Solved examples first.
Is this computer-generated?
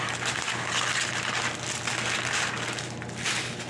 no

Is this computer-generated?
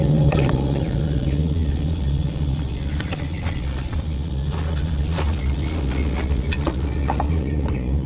yes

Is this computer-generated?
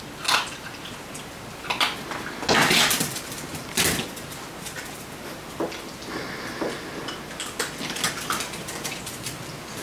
no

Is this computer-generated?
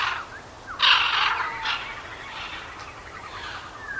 no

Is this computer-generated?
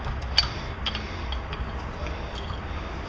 no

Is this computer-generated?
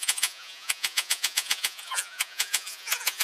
yes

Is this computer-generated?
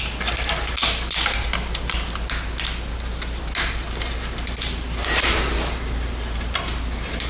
no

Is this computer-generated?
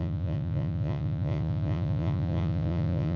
yes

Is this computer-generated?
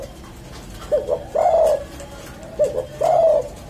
no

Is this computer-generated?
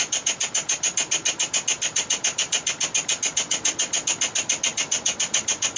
no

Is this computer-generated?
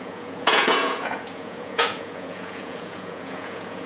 yes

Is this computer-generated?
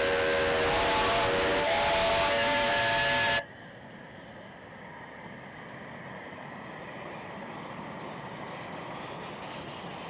no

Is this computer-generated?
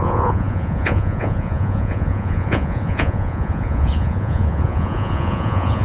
yes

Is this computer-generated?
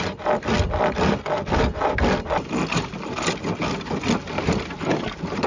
no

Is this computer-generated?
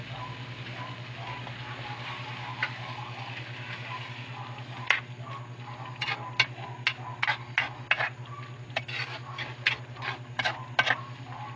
no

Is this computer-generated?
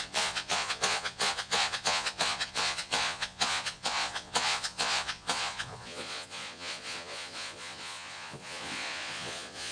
yes